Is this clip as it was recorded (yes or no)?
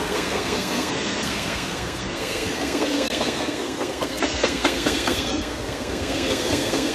no